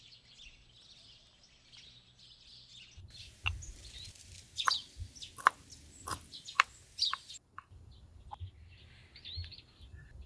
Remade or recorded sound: recorded